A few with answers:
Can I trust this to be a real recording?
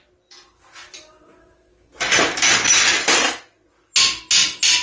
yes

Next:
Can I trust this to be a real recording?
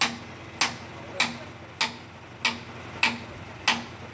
yes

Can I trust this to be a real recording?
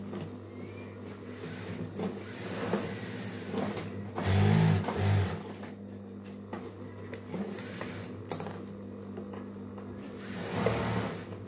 yes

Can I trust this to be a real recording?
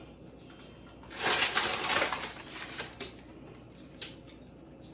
yes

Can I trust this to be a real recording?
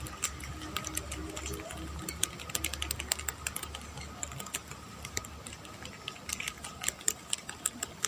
yes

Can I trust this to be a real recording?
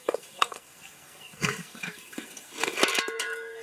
no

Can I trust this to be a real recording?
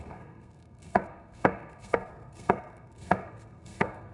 no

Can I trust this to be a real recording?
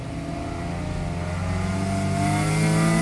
yes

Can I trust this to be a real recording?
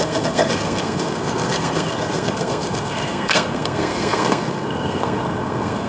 no